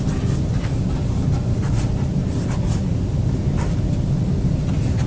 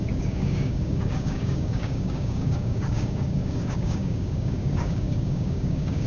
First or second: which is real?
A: first